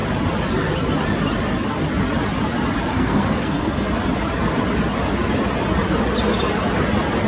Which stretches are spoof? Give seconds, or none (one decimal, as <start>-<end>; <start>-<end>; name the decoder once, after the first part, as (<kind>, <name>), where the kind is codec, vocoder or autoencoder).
2.9-3.9 (codec, SNAC)